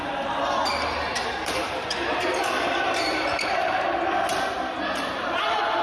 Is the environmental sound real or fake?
real